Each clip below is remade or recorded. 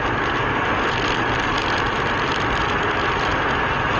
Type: recorded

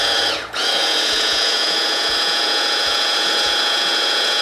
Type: remade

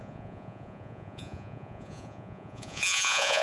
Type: remade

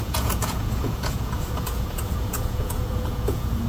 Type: remade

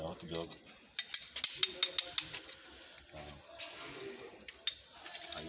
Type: recorded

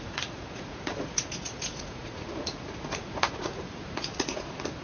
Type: remade